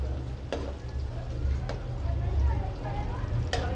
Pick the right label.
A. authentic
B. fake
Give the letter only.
A